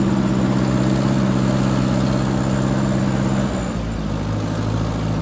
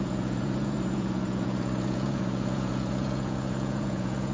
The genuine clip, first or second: first